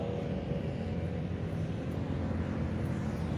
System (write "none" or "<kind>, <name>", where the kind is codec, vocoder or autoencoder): none